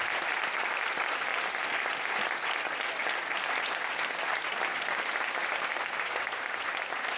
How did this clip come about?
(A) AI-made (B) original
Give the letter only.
A